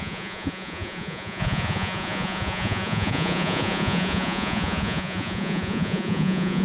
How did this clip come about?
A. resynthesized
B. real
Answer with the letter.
A